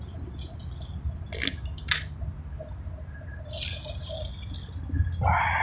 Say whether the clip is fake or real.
real